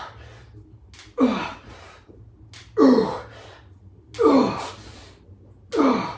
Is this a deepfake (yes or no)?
no